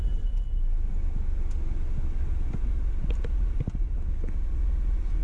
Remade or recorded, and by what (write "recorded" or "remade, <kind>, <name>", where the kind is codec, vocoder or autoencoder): recorded